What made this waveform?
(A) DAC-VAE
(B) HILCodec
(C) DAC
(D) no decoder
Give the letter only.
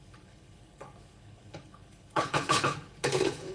B